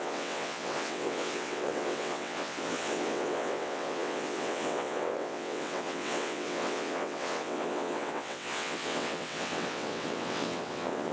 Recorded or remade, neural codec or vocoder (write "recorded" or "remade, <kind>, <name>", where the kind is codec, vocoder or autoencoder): remade, vocoder, WaveNeXt